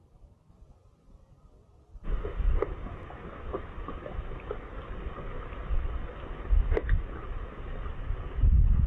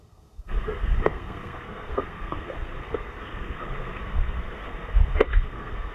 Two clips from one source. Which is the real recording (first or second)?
first